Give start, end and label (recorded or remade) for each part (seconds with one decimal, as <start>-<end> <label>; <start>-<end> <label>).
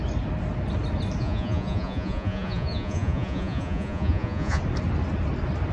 0.0-1.2 recorded; 1.2-4.6 remade; 4.6-5.7 recorded